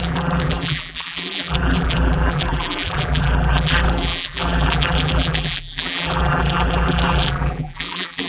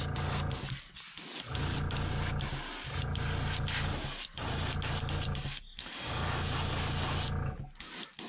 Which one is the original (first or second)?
second